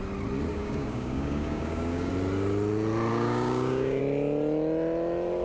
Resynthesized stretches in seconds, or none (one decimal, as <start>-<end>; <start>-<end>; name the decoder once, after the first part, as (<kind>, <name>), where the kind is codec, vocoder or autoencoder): 0.5-2.1 (codec, DAC); 3.1-4.0